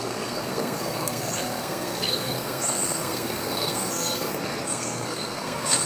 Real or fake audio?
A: fake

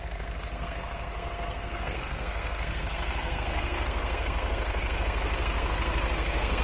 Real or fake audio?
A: fake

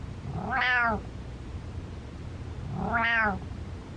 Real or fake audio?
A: real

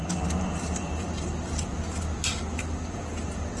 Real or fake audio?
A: real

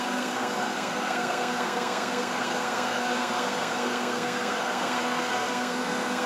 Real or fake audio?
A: fake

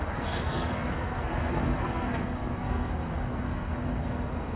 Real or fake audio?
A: fake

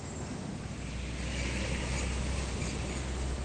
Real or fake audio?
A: real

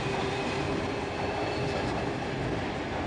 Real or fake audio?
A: real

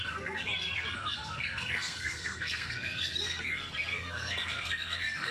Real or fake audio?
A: fake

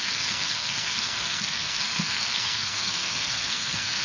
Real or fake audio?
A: fake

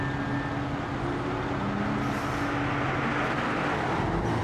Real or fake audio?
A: real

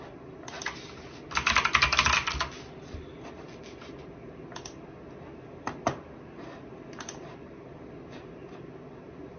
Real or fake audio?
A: real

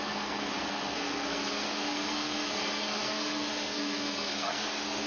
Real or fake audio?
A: fake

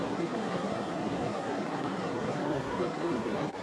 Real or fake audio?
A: fake